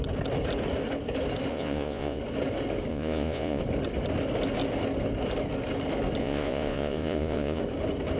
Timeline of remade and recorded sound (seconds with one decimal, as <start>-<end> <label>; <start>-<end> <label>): 0.0-1.5 recorded; 1.5-2.2 remade; 2.2-2.9 recorded; 2.9-3.6 remade; 3.6-6.2 recorded; 6.2-7.6 remade; 7.6-8.2 recorded